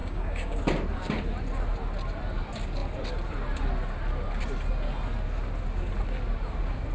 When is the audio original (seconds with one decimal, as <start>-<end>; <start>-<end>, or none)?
0.6-6.9